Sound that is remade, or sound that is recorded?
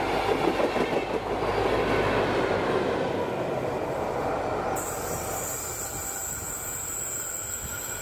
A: recorded